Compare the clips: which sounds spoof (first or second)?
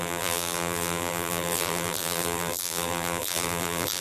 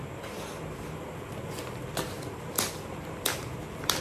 first